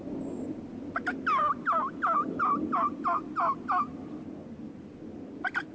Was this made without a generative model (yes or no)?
no